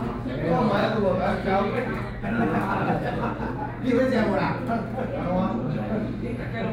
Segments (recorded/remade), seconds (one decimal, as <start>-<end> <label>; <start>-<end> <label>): 0.0-0.8 recorded; 0.8-3.9 remade; 3.9-6.7 recorded